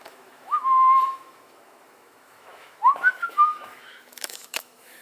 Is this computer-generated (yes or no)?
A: yes